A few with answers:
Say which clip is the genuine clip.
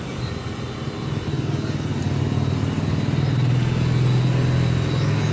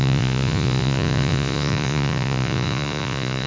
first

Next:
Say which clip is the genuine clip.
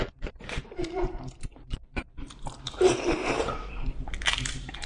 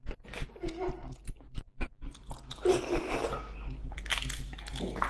second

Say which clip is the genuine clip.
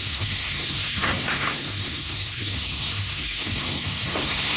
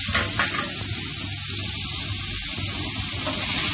second